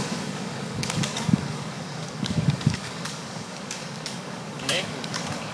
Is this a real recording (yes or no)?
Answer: no